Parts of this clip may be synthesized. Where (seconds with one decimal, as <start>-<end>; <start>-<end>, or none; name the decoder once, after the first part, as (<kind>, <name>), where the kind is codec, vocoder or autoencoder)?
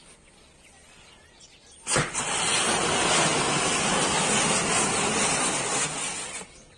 none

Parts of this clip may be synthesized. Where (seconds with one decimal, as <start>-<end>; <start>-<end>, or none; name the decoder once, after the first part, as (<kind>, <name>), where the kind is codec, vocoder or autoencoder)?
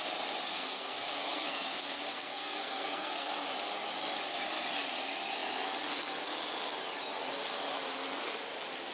0.5-3.3 (codec, SNAC)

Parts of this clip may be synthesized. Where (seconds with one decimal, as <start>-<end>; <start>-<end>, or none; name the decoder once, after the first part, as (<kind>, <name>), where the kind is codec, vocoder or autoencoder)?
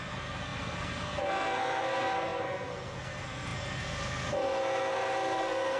0.0-5.8 (codec, SNAC)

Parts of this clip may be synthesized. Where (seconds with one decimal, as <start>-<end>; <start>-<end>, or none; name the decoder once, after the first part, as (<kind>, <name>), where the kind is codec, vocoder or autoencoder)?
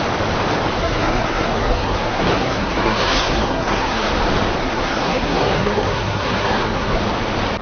0.8-4.1 (codec, SNAC); 4.6-7.0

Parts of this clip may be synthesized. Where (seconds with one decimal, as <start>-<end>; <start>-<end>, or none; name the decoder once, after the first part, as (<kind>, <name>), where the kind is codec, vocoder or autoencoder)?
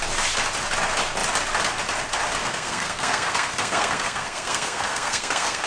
2.4-5.7 (codec, SNAC)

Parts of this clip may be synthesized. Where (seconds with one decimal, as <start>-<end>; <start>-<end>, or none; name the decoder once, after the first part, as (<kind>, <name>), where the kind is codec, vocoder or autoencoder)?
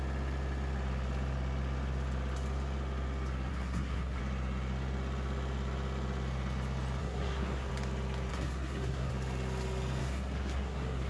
3.5-4.2 (codec, SNAC); 7.0-7.7; 8.3-9.1; 10.0-11.1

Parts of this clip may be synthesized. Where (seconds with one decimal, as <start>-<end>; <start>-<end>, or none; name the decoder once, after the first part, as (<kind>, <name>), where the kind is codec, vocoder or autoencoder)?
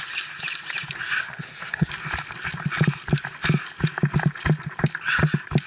1.2-1.9 (codec, SNAC)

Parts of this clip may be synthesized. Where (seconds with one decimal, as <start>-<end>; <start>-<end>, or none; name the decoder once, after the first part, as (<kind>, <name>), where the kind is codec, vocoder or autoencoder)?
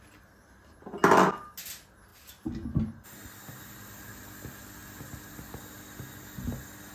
none